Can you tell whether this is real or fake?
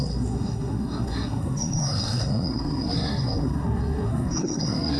fake